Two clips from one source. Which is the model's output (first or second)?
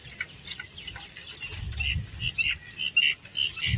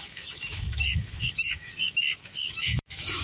second